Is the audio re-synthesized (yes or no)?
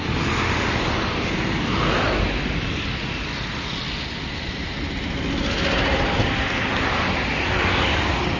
no